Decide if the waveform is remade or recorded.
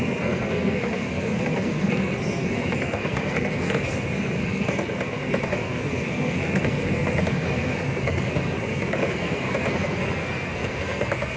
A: remade